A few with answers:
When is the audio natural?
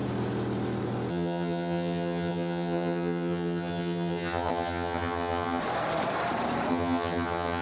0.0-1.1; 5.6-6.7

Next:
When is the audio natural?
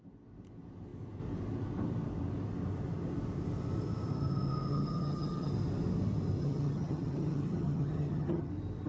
0.0-4.7; 5.5-6.4; 8.5-8.9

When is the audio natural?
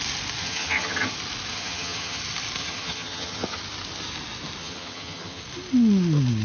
0.0-0.4; 1.1-1.5; 2.2-2.6; 3.6-4.6; 5.4-6.4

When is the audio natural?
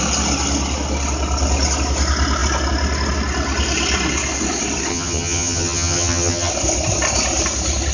0.0-4.9; 6.5-7.9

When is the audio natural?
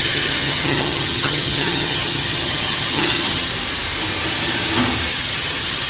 3.5-5.1